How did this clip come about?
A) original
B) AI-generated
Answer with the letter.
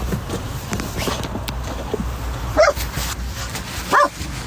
A